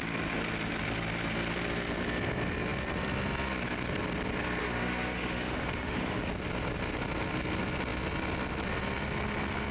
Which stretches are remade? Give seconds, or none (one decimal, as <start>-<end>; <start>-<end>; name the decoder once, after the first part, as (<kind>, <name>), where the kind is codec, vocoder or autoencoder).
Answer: 4.6-6.3 (autoencoder, DAC-VAE)